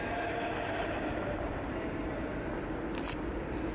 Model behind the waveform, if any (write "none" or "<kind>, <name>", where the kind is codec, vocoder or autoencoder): none